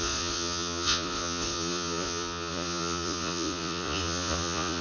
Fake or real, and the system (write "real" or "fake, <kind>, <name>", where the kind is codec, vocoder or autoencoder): fake, vocoder, Vocos